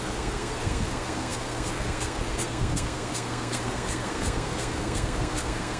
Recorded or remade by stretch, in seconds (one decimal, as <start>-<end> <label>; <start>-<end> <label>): 0.0-5.8 remade